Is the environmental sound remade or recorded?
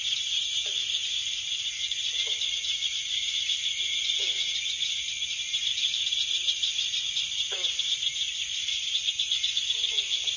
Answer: remade